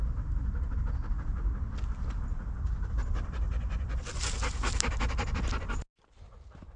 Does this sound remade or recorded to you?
recorded